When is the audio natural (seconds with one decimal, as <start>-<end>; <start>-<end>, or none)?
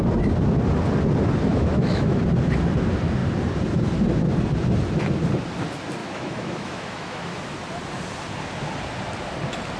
0.0-1.5; 2.2-6.0; 7.3-9.8